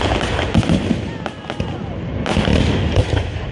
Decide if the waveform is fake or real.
real